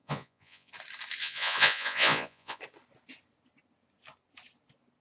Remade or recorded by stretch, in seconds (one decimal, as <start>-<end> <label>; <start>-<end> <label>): 0.0-0.7 remade; 0.7-1.2 recorded; 1.2-2.6 remade; 2.6-5.0 recorded